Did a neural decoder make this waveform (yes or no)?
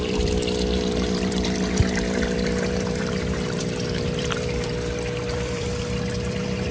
yes